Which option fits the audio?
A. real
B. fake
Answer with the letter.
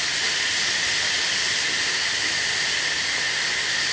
A